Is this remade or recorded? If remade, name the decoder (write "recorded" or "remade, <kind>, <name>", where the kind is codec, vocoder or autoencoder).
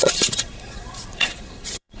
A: remade, vocoder, Vocos